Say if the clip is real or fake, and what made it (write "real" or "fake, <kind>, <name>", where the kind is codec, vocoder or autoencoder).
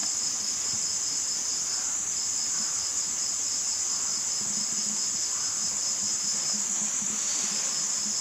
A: real